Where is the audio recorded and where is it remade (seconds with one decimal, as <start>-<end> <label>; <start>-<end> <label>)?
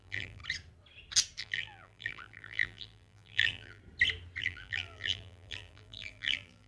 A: 0.0-0.4 remade; 0.4-1.4 recorded; 1.4-3.8 remade; 3.8-4.4 recorded; 4.4-6.7 remade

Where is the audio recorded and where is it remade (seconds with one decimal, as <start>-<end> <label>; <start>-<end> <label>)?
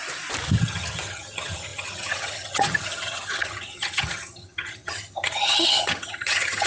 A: 0.0-0.6 recorded; 0.6-6.7 remade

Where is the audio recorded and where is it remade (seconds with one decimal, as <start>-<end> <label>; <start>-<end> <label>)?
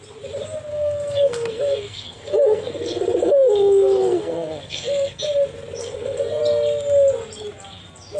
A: 0.0-0.7 recorded; 0.7-5.2 remade; 5.2-5.8 recorded; 5.8-6.4 remade; 6.4-8.2 recorded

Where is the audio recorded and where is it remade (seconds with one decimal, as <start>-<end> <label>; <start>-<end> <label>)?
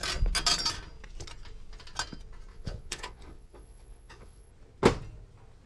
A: 0.0-2.5 recorded; 2.5-4.5 remade; 4.5-5.7 recorded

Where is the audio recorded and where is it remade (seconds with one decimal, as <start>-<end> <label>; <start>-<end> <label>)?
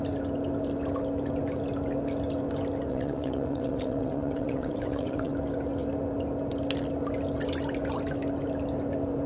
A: 0.0-2.9 recorded; 2.9-5.3 remade; 5.3-9.3 recorded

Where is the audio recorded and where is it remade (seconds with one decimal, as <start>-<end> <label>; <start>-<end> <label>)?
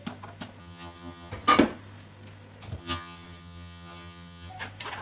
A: 0.0-0.6 recorded; 0.6-1.3 remade; 1.3-2.8 recorded; 2.8-4.5 remade; 4.5-5.0 recorded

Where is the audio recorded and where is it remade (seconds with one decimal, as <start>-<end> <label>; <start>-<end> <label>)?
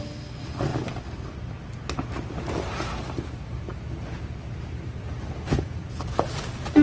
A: 0.0-6.8 recorded